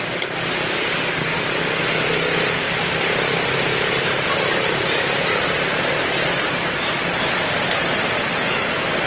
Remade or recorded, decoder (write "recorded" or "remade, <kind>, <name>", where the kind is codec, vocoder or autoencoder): recorded